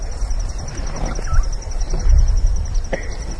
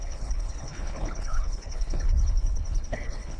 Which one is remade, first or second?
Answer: second